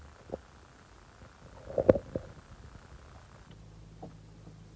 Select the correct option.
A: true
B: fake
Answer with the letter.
A